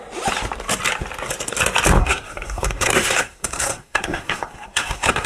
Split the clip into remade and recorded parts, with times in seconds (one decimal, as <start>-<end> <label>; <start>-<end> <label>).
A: 0.0-2.0 recorded; 2.0-5.3 remade